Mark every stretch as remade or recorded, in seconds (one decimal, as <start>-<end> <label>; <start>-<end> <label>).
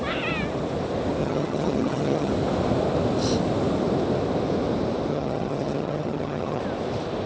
0.0-1.2 recorded; 1.2-2.3 remade; 2.3-5.1 recorded; 5.1-6.6 remade; 6.6-7.3 recorded